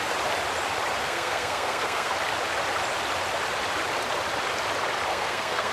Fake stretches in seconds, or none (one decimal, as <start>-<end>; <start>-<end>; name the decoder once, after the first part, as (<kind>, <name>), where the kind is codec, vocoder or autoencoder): 1.0-2.1 (codec, SNAC); 5.1-5.7